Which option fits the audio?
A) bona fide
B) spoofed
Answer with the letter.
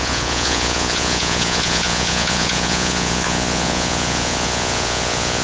B